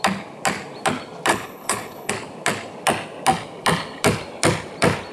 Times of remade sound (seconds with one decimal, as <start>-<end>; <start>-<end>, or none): 1.3-2.1